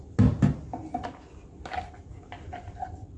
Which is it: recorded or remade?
recorded